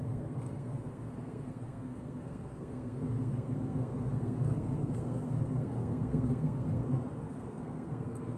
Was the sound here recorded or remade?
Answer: remade